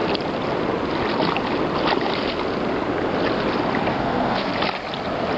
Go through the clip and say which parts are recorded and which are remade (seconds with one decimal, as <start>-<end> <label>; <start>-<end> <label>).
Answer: 0.0-3.9 recorded; 3.9-4.5 remade; 4.5-5.4 recorded